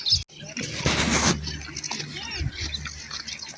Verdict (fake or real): real